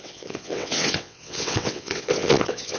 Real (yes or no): no